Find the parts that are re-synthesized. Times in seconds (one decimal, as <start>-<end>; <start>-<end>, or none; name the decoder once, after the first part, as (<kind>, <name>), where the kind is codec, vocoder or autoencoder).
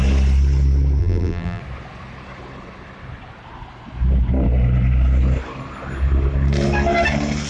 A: 1.0-1.6 (vocoder, BigVGAN v2)